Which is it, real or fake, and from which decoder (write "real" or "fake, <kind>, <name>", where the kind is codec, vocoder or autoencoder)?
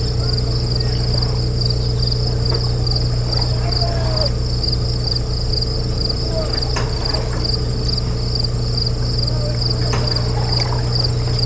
real